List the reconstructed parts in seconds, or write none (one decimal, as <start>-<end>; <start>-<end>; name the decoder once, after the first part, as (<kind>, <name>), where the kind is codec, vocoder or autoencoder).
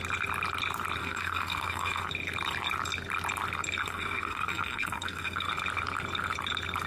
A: 1.0-2.1 (codec, SNAC); 3.8-5.5